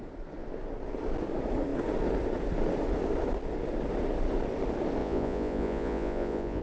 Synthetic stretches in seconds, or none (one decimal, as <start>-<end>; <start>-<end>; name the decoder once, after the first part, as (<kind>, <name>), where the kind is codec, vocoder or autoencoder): 5.0-6.6 (vocoder, Vocos)